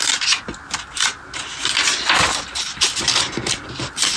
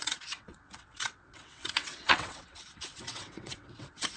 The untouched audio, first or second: first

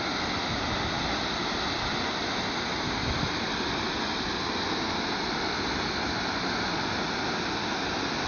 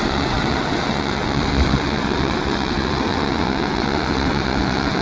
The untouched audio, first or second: first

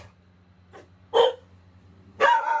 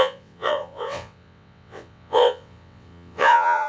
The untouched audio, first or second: first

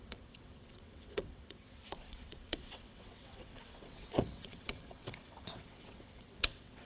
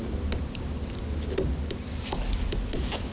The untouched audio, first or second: second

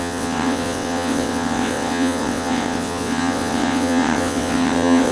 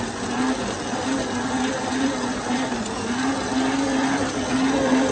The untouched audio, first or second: second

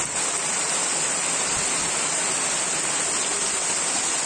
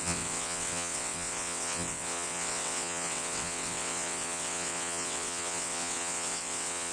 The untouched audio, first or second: first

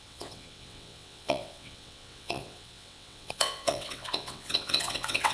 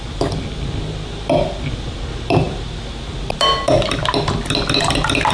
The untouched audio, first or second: second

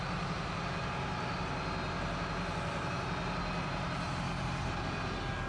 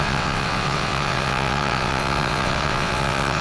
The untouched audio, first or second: first